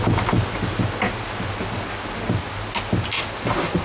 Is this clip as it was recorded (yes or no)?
yes